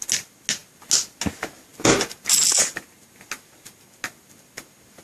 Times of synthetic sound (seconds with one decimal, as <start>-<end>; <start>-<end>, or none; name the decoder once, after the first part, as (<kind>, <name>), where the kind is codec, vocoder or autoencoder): none